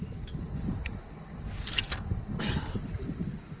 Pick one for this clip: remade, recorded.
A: recorded